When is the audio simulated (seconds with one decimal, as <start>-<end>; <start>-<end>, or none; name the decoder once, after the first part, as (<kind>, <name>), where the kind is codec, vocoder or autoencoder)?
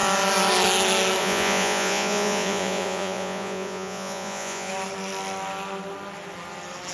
1.2-4.7 (vocoder, Vocos)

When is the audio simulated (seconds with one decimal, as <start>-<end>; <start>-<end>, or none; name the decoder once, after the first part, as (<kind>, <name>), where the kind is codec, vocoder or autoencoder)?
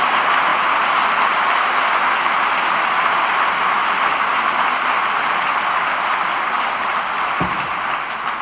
none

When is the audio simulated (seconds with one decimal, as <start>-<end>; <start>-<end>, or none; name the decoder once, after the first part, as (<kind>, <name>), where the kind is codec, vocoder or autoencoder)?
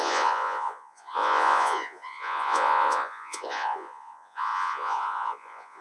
0.0-5.8 (vocoder, Vocos)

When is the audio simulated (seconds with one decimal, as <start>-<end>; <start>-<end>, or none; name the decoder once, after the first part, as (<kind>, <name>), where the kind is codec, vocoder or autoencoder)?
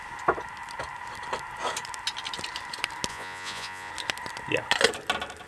3.1-3.9 (vocoder, Vocos)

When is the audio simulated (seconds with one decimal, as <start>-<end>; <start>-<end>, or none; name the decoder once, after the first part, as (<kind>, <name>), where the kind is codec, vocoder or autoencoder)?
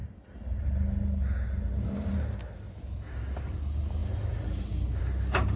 none